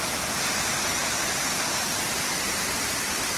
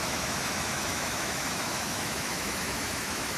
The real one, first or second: first